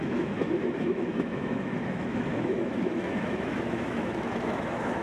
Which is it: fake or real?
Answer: fake